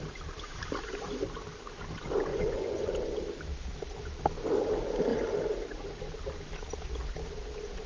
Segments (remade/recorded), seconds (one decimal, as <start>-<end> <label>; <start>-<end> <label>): 0.0-2.3 recorded; 2.3-2.9 remade; 2.9-7.9 recorded